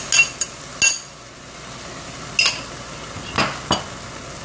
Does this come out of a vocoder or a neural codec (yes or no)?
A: no